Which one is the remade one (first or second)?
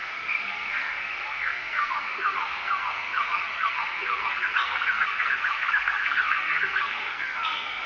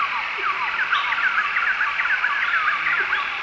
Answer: first